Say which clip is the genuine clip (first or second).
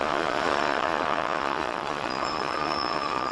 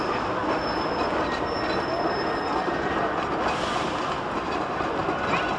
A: second